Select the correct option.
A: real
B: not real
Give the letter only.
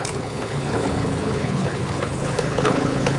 B